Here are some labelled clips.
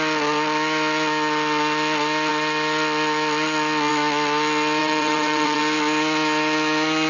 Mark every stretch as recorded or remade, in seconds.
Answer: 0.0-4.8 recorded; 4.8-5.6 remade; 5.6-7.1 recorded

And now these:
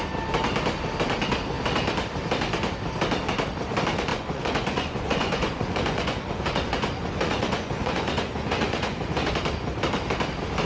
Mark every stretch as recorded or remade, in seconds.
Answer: 0.0-4.1 recorded; 4.1-9.3 remade; 9.3-10.7 recorded

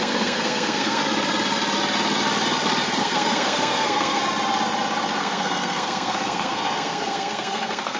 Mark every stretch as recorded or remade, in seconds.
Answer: 0.0-1.0 remade; 1.0-3.0 recorded; 3.0-4.2 remade; 4.2-5.2 recorded; 5.2-8.0 remade

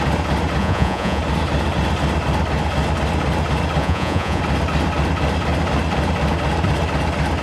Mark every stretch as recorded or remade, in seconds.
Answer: 0.0-0.6 recorded; 0.6-1.2 remade; 1.2-3.8 recorded; 3.8-4.4 remade; 4.4-7.4 recorded